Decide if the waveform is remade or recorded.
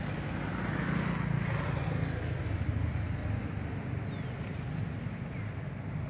recorded